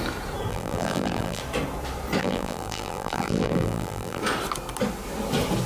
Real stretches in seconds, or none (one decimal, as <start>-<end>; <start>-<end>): 0.0-0.5; 1.4-2.2; 4.2-5.7